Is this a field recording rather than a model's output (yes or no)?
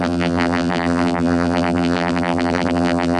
no